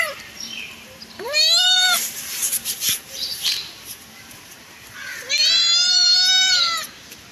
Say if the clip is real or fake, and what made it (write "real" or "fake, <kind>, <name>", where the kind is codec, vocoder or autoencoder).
fake, vocoder, BigVGAN v2